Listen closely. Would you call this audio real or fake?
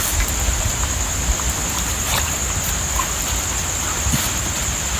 real